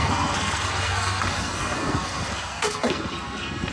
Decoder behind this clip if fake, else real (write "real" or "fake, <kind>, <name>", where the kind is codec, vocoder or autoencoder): fake, codec, SNAC